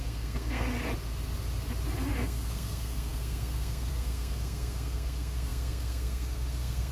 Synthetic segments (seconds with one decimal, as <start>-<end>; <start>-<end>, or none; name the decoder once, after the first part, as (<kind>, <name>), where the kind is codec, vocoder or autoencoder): 0.0-0.7 (codec, SNAC); 2.2-6.9